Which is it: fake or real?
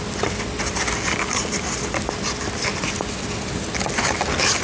real